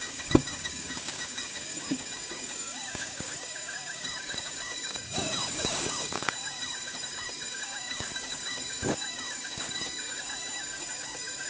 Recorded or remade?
remade